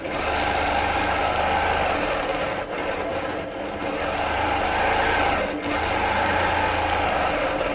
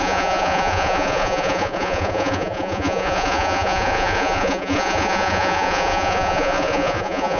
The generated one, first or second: second